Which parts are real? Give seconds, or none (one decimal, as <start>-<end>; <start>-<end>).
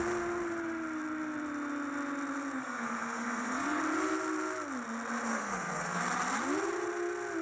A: 0.0-2.6; 3.8-5.3; 6.0-7.4